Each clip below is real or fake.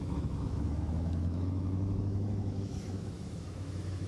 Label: fake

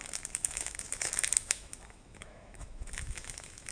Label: fake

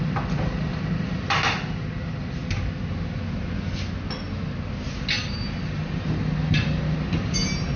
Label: real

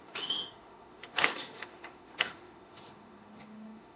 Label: fake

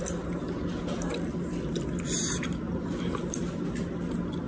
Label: real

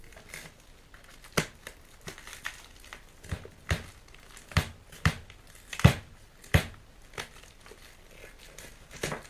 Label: real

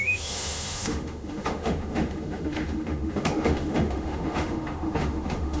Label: fake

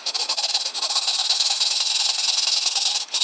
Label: fake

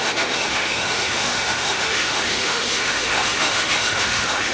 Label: fake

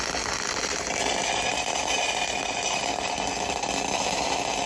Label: real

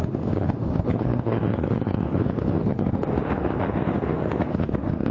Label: fake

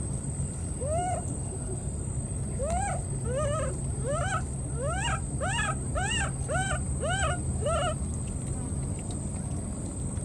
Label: real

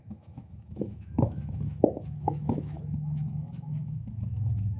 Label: fake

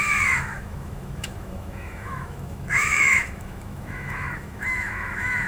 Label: fake